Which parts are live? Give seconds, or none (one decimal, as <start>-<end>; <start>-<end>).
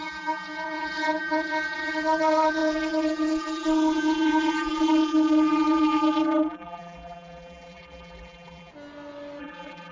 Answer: 8.7-9.4